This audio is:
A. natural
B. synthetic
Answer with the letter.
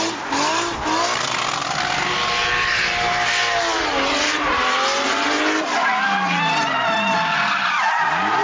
A